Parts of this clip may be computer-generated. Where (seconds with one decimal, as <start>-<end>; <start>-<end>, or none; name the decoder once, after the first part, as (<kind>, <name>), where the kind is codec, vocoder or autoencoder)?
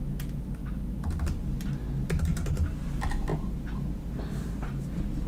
none